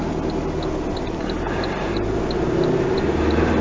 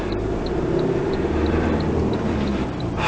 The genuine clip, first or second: first